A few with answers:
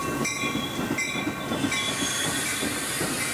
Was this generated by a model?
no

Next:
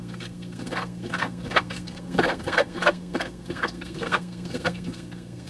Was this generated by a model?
yes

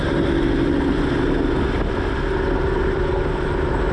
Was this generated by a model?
no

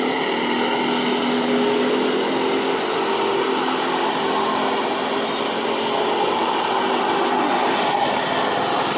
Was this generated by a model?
no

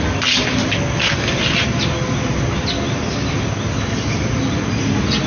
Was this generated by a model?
no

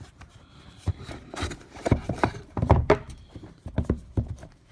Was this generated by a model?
yes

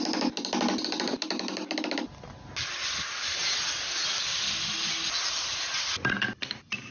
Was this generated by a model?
no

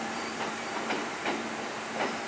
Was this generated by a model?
yes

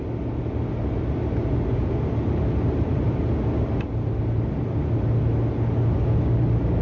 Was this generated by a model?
no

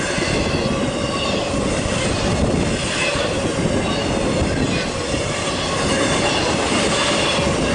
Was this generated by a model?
no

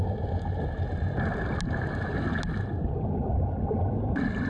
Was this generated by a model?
no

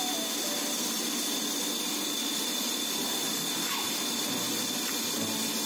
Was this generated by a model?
no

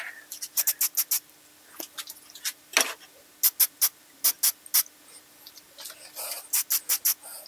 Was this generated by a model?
no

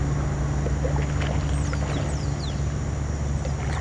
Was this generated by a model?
no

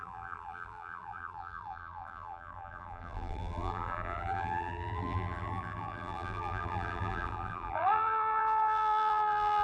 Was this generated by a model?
yes